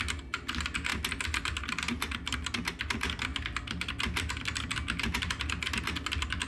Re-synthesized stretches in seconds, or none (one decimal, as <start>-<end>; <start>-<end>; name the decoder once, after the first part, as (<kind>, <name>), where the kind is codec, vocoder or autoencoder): none